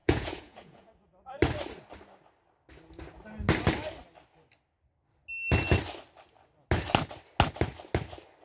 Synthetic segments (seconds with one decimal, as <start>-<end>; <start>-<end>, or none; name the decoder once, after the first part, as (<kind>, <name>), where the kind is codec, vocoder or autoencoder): 0.0-0.9 (vocoder, Vocos)